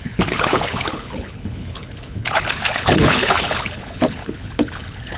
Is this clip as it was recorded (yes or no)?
no